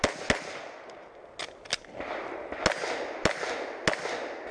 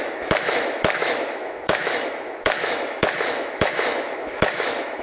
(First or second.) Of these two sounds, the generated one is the second